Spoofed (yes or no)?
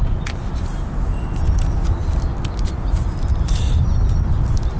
no